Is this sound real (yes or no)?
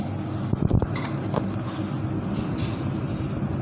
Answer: yes